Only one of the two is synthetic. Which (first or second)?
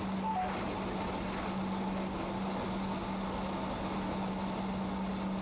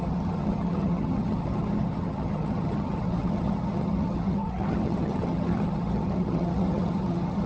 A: second